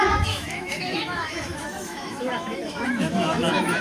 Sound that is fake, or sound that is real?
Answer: fake